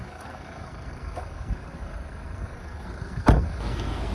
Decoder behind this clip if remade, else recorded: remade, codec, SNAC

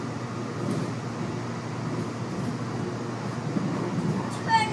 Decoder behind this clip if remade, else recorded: recorded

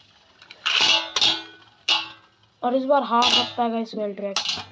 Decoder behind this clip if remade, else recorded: recorded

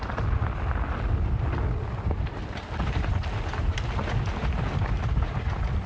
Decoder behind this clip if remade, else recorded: recorded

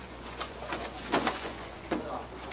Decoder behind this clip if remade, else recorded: remade, vocoder, Vocos